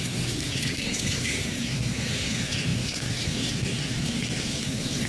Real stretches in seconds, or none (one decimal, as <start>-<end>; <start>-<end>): none